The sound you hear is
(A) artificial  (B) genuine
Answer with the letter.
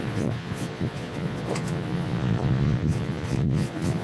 A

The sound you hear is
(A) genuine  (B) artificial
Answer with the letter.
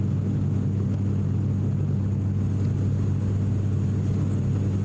A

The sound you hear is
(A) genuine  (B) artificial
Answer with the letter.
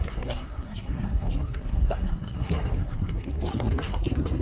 B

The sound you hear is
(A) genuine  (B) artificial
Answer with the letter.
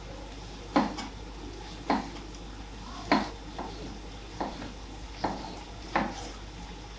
A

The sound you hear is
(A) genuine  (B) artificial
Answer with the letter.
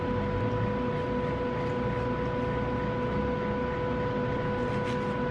A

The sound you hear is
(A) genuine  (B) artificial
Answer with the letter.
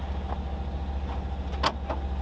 A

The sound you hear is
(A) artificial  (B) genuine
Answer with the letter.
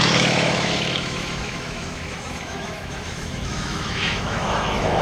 A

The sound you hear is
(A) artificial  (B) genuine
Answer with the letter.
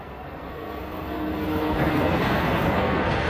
A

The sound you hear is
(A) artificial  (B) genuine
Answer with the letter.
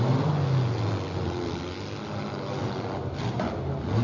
B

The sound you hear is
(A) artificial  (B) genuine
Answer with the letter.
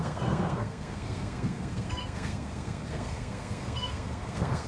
A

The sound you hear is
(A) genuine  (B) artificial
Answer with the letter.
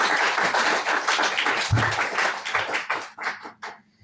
A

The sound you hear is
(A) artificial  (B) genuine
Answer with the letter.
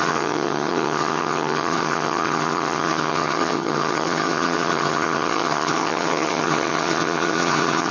A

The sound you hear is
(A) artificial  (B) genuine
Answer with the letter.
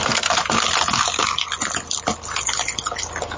B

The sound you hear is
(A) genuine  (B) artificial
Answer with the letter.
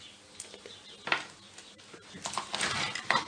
A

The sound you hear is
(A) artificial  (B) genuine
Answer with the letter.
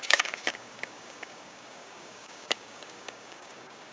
A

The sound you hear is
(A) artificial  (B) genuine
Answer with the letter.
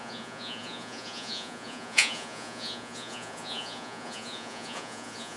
A